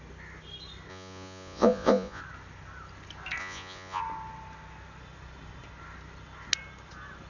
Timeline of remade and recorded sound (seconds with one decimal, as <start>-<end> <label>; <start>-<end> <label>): 0.0-0.9 recorded; 0.9-2.2 remade; 2.2-3.4 recorded; 3.4-4.0 remade; 4.0-7.3 recorded